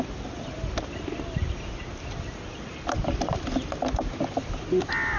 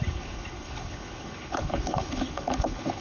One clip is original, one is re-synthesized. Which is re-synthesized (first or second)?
second